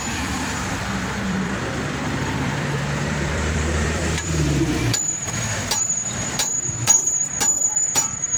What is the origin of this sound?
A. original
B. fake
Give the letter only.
B